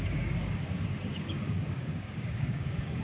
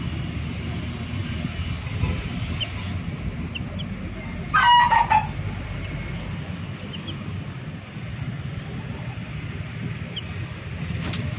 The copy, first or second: first